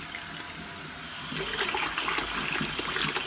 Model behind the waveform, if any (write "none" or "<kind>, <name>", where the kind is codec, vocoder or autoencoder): none